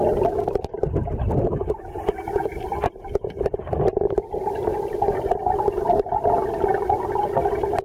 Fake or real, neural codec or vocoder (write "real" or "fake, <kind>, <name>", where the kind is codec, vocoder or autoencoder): real